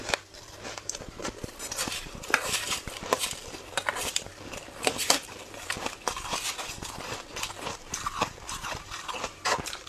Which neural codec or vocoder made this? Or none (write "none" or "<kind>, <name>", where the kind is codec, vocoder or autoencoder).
vocoder, BigVGAN v2